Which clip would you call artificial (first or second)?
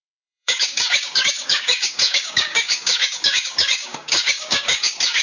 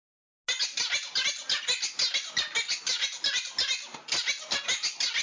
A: first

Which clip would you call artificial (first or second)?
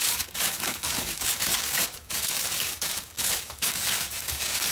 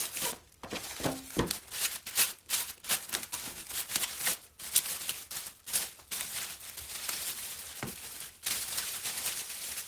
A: first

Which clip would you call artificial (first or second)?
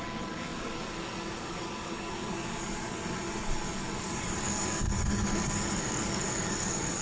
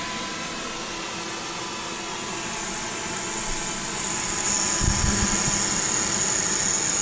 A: first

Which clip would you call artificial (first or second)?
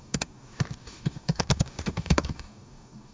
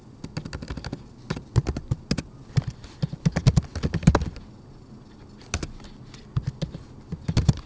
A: first